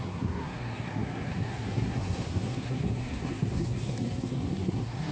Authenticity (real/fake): fake